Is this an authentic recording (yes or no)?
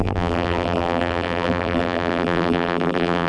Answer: no